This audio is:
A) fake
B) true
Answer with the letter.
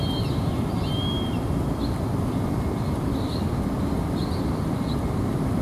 B